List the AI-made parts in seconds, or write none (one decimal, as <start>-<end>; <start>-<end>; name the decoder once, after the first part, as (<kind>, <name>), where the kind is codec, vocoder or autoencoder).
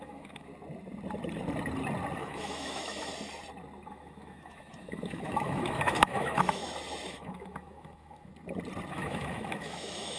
0.0-0.5 (autoencoder, DAC-VAE); 2.2-3.1; 3.9-6.6; 7.1-8.3; 8.9-10.2